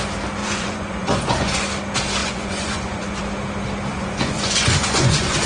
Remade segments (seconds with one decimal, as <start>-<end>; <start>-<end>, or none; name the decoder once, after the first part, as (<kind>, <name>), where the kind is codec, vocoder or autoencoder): 0.4-1.7 (vocoder, Vocos); 2.2-3.2; 3.9-5.5